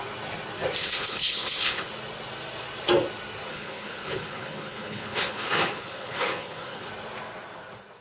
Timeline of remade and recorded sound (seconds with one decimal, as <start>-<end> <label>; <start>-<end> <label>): 0.0-0.8 recorded; 0.8-1.9 remade; 1.9-3.5 recorded; 3.5-6.9 remade; 6.9-8.0 recorded